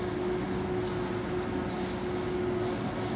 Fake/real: real